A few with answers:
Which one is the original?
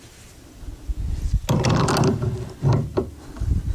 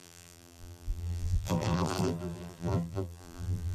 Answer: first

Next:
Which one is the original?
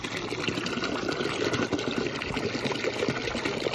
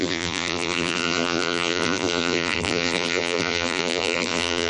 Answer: first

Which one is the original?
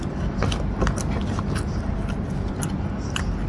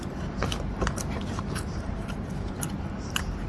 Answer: first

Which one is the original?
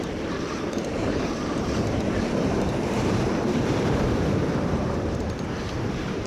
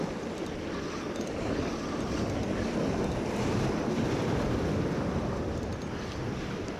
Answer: second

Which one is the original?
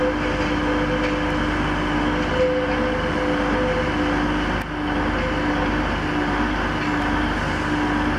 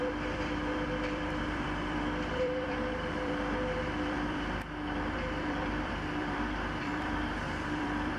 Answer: first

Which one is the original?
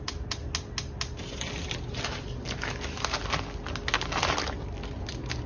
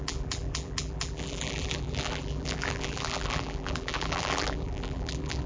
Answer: first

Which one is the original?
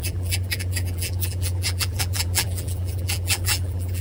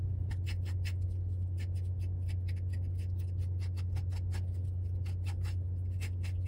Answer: second